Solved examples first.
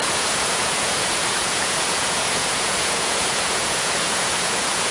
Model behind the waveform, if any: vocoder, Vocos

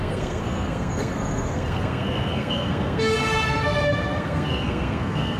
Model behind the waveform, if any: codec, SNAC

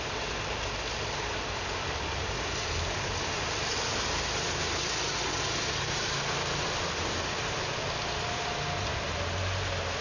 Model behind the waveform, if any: none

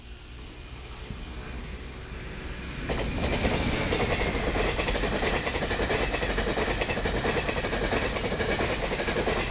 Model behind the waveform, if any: none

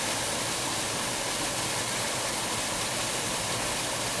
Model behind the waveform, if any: none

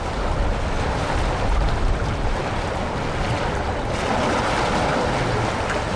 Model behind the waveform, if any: none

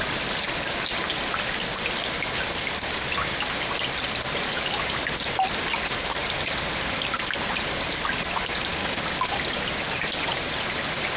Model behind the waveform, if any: none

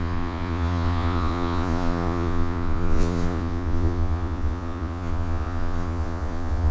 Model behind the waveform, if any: vocoder, Vocos